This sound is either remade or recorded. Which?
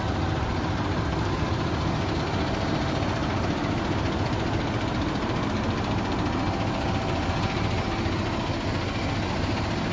recorded